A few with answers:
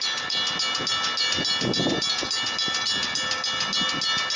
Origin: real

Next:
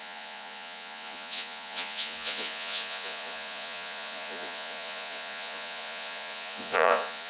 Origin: fake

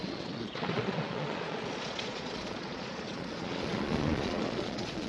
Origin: fake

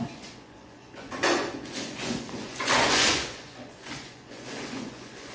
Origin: fake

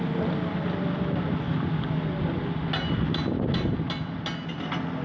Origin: real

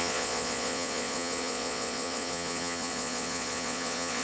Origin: fake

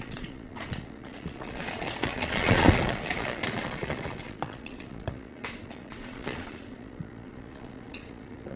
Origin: fake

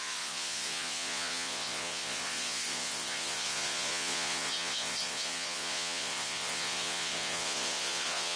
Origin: fake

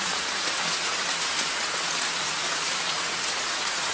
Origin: fake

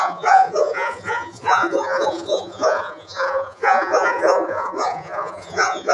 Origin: fake